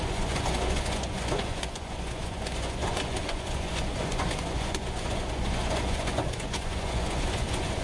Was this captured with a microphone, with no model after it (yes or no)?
no